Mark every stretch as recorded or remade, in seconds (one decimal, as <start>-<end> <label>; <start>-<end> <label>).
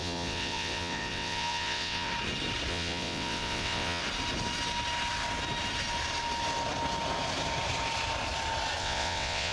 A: 0.0-2.1 remade; 2.1-2.7 recorded; 2.7-4.0 remade; 4.0-8.8 recorded; 8.8-9.5 remade